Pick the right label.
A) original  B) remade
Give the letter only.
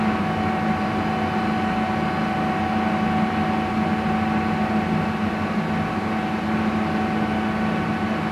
A